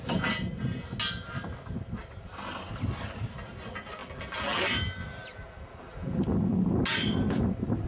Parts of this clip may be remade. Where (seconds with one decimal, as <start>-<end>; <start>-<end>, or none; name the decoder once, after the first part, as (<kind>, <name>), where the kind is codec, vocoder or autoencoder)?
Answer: 4.0-4.6 (vocoder, BigVGAN v2); 5.0-6.2